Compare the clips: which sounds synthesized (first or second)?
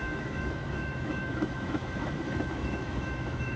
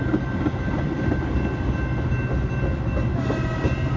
first